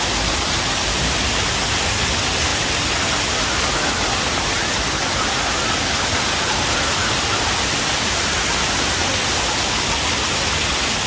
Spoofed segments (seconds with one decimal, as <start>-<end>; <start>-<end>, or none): none